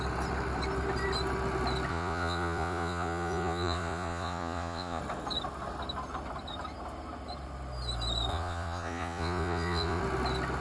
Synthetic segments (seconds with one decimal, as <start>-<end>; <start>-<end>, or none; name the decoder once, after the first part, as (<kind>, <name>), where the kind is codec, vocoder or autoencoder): 1.9-5.0 (vocoder, Vocos); 8.3-10.0